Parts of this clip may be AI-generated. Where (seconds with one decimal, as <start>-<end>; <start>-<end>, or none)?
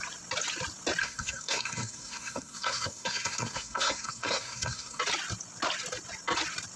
1.0-5.0